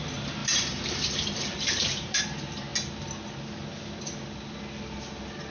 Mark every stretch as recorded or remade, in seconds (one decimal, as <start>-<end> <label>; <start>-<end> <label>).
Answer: 0.0-0.4 recorded; 0.4-2.2 remade; 2.2-5.5 recorded